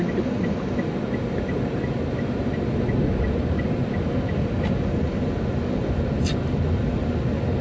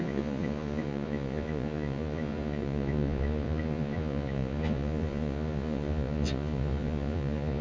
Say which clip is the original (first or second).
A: first